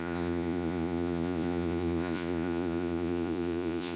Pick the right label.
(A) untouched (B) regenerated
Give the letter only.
B